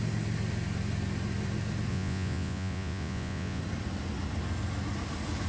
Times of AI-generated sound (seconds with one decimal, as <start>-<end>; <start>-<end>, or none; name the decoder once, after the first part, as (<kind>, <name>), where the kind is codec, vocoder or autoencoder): 1.9-3.6 (vocoder, Vocos)